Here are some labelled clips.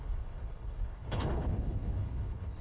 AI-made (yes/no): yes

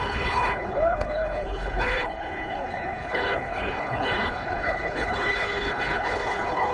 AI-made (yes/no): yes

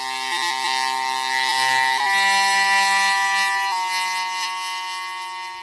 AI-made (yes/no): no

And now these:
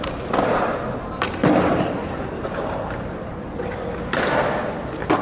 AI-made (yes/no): no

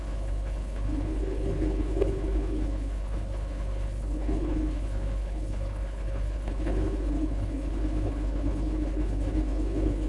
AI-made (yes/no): yes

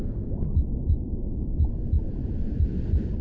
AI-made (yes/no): no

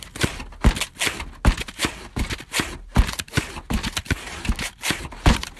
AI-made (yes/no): no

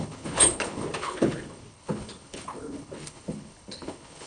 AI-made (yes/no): yes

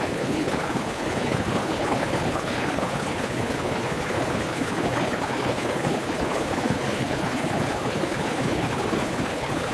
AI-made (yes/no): yes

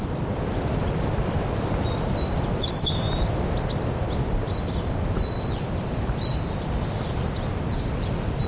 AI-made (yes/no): no